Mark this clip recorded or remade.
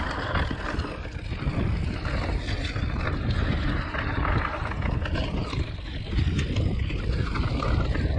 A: recorded